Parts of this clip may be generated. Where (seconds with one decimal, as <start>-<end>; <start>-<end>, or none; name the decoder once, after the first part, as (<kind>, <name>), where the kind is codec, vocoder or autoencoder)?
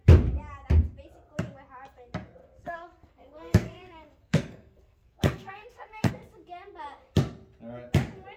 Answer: 2.4-6.1 (codec, SNAC)